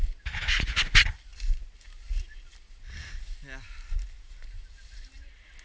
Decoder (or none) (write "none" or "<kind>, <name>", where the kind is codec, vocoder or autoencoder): none